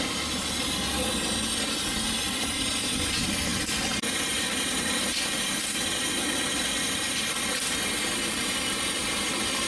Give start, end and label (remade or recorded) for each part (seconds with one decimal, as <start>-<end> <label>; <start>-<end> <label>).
0.0-9.7 recorded